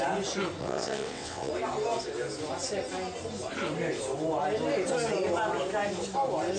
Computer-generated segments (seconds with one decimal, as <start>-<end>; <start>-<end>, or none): 0.6-1.5

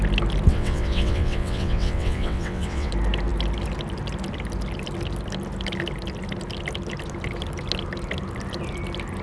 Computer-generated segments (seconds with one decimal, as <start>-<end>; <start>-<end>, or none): 0.5-2.9

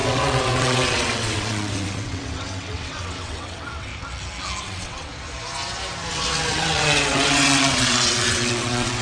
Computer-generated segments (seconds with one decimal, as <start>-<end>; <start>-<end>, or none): 0.0-3.9; 4.6-5.1; 6.1-9.0

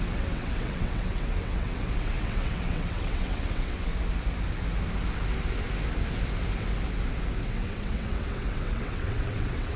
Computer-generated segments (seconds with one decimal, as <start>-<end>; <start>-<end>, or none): 0.0-3.9; 7.4-9.8